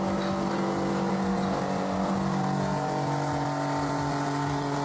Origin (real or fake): real